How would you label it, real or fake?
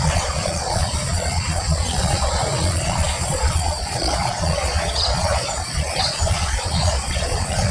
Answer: fake